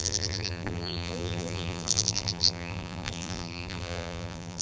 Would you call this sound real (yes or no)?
no